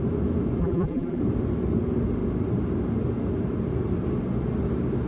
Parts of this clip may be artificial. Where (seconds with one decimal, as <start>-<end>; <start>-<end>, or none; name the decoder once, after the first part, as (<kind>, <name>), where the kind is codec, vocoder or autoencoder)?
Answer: 0.6-1.2 (vocoder, BigVGAN v2)

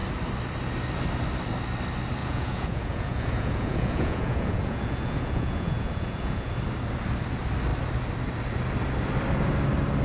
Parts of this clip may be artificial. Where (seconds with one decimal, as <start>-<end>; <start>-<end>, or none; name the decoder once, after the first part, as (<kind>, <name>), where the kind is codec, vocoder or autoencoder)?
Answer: 2.2-6.5 (vocoder, Vocos)

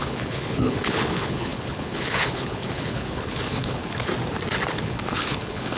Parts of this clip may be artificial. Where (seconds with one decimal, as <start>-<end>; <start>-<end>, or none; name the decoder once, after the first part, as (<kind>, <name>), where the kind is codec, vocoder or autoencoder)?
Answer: 0.0-4.1 (codec, HILCodec); 4.7-5.8

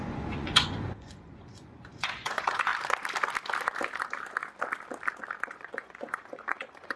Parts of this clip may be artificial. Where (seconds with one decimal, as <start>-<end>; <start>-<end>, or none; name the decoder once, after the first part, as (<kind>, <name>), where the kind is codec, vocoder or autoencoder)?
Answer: 0.0-2.7 (vocoder, Vocos); 5.5-7.0

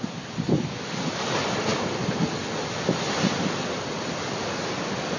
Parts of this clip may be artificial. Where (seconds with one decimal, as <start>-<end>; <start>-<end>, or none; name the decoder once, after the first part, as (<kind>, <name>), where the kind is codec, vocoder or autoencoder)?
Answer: none

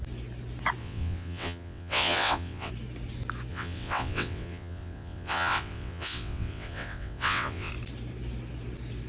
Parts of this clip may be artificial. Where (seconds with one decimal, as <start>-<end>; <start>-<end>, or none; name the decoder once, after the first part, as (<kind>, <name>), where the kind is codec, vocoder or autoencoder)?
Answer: 0.8-2.7 (vocoder, WaveNeXt); 3.5-7.7

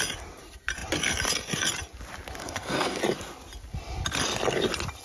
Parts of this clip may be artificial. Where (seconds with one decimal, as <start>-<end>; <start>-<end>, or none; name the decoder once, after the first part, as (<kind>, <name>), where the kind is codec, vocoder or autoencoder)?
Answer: 2.4-3.0 (codec, SNAC)